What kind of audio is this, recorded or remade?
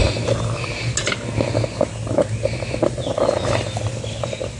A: recorded